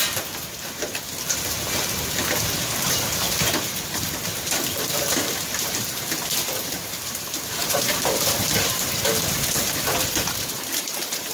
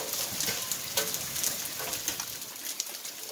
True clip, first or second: second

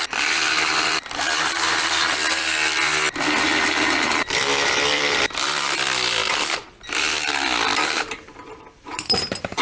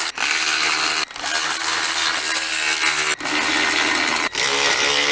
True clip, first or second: second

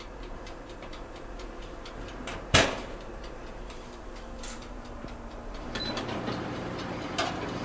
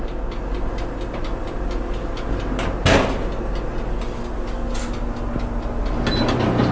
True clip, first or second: second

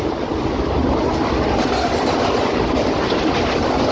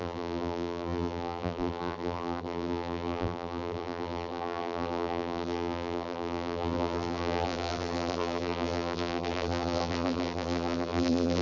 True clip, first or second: first